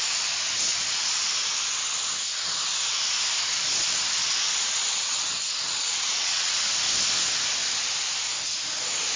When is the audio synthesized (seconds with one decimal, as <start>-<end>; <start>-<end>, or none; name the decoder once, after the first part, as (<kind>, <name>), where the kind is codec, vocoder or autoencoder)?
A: 4.8-6.5 (vocoder, WaveNeXt)

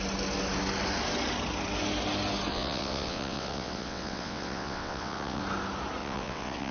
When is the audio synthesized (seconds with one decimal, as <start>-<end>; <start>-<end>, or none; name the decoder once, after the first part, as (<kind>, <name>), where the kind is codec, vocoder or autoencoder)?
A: 2.5-5.4 (vocoder, WaveNeXt); 6.0-6.7

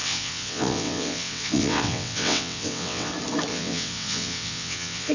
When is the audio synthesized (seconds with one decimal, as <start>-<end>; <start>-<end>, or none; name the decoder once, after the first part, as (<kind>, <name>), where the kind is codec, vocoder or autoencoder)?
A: 0.0-3.1 (vocoder, WaveNeXt); 3.5-5.1

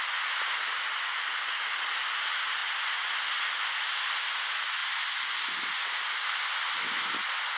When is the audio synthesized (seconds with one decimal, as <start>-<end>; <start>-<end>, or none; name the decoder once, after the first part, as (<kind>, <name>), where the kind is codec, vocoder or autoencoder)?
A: none

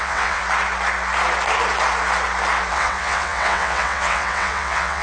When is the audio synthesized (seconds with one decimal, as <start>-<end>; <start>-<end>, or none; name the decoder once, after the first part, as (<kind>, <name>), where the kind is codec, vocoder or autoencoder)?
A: 0.0-0.4 (vocoder, WaveNeXt); 2.7-5.0